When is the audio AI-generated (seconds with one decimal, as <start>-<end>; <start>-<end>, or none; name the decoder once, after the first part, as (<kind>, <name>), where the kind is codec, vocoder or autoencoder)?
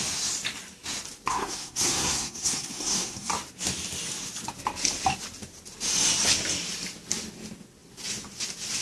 1.3-3.3 (codec, SNAC)